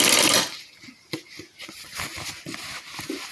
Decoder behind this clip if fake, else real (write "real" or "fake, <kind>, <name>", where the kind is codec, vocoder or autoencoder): real